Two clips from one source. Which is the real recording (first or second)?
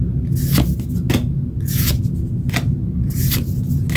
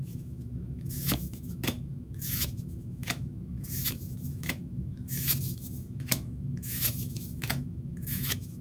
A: first